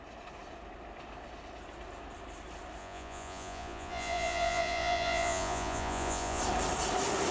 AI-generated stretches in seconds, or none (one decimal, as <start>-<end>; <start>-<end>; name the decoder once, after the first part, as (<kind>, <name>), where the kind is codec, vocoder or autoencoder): 2.8-6.4 (vocoder, Vocos)